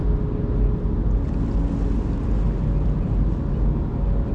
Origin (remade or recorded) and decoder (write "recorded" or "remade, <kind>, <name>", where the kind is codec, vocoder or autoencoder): recorded